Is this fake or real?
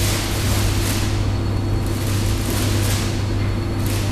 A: real